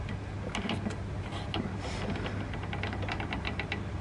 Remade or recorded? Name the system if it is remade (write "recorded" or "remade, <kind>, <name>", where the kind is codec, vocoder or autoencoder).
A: recorded